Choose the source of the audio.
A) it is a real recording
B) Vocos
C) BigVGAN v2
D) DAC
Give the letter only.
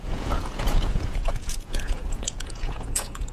B